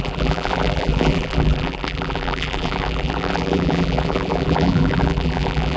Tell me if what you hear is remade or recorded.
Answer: remade